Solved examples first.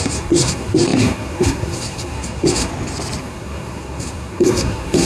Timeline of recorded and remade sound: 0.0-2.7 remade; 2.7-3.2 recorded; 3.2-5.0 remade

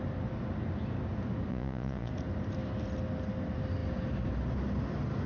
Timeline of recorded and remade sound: 0.0-1.5 recorded; 1.5-2.1 remade; 2.1-5.3 recorded

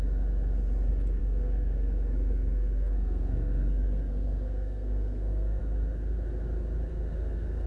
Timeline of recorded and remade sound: 0.0-1.2 recorded; 1.2-5.6 remade; 5.6-6.9 recorded; 6.9-7.7 remade